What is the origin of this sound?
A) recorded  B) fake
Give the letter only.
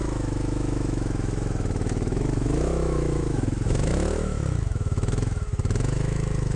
B